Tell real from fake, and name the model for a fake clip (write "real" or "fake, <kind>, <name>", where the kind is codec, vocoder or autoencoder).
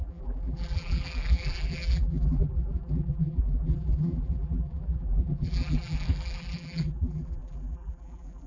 fake, vocoder, BigVGAN v2